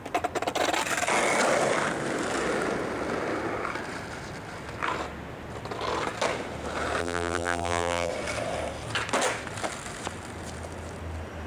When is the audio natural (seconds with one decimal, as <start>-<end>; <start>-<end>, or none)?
0.0-7.0; 8.1-11.5